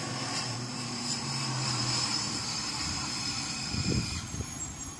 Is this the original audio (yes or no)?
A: no